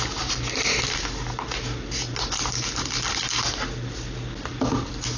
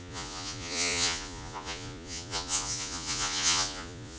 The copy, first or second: second